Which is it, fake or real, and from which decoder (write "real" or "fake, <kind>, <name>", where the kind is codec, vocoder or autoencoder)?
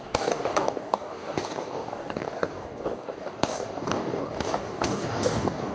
fake, codec, DAC